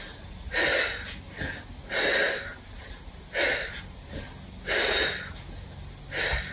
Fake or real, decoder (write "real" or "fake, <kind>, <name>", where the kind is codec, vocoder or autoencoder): real